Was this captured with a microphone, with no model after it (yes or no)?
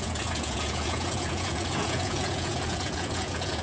no